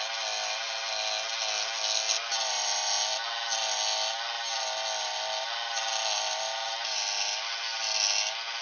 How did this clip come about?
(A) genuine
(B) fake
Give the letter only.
A